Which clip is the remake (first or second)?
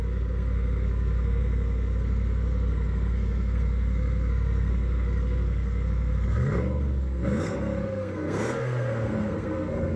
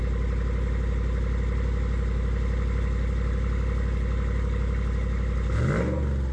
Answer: first